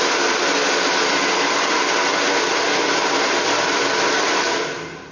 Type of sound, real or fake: real